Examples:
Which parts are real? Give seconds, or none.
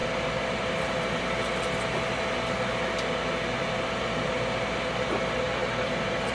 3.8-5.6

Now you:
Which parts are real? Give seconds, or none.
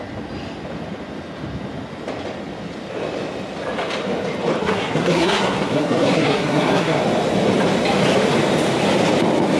0.0-4.6; 7.0-9.6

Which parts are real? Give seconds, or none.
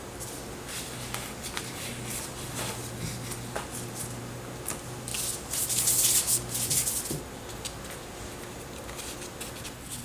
0.0-10.0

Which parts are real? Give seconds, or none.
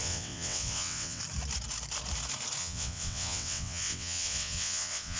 1.2-2.6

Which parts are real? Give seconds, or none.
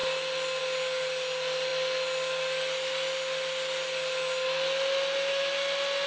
0.0-6.1